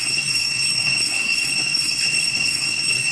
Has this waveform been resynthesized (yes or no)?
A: yes